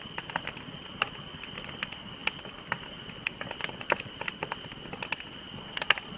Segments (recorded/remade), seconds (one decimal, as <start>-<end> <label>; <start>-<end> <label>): 0.0-2.2 remade; 2.2-6.2 recorded